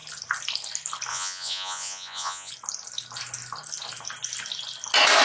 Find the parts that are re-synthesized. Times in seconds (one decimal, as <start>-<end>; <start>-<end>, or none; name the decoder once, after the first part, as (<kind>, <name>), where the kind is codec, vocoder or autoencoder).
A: 1.1-2.5 (vocoder, Vocos)